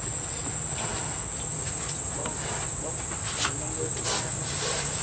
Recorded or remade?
recorded